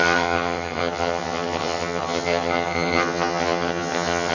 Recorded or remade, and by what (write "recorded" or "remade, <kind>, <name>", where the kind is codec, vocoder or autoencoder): remade, vocoder, HiFi-GAN